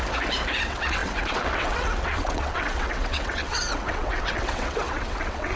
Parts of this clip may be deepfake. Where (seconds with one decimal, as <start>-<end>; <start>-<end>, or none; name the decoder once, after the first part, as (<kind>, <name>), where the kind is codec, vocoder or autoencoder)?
0.6-5.6 (vocoder, WaveNeXt)